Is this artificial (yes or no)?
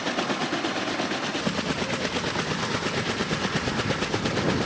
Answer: no